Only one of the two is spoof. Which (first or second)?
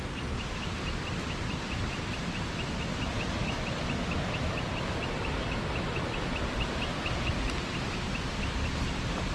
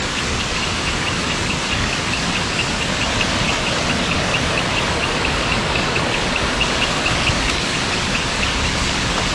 second